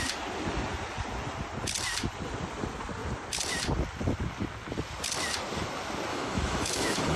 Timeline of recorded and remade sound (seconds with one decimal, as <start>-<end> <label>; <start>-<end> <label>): 0.0-6.1 recorded; 6.1-7.2 remade